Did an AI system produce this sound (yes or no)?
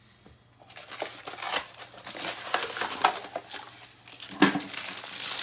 no